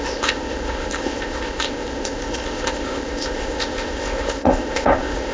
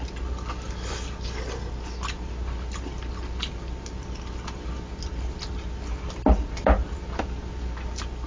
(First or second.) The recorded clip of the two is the second